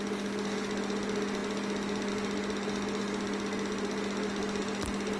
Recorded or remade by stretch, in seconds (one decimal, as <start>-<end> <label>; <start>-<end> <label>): 0.0-5.2 recorded